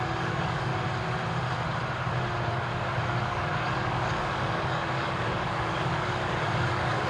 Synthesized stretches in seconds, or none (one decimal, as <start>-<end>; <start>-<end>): 0.0-0.7; 2.5-7.1